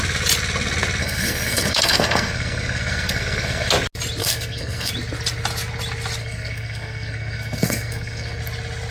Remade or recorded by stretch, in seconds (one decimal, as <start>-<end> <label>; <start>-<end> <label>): 0.0-1.0 recorded; 1.0-3.7 remade; 3.7-4.2 recorded; 4.2-4.9 remade; 4.9-6.2 recorded; 6.2-8.4 remade; 8.4-8.9 recorded